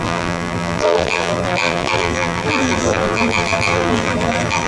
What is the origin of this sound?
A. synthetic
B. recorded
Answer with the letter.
A